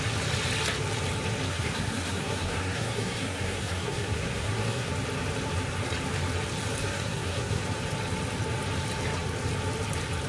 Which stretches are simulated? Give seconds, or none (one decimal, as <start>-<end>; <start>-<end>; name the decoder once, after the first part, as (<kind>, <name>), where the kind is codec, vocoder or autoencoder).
1.5-4.9 (codec, SNAC); 6.8-7.6